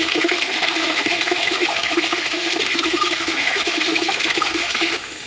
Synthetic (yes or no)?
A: yes